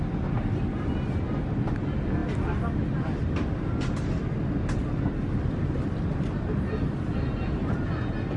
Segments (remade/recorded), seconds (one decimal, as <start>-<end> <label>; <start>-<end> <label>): 0.0-8.4 recorded